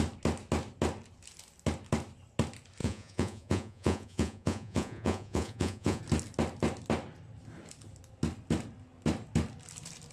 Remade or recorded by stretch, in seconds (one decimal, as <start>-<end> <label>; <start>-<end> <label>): 0.0-2.8 recorded; 2.8-6.0 remade; 6.0-10.1 recorded